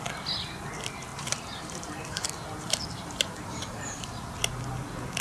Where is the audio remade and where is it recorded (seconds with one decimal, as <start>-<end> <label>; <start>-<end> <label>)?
0.0-1.1 recorded; 1.1-4.2 remade; 4.2-5.2 recorded